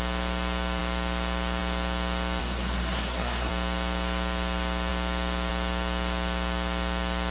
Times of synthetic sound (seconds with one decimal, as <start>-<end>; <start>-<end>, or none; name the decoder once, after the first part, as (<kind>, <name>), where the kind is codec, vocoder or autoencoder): 2.4-3.5 (codec, SNAC)